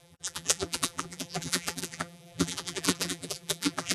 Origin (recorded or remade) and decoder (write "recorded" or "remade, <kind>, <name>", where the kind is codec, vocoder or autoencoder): remade, vocoder, BigVGAN v2